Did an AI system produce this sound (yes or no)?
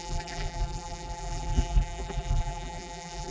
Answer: yes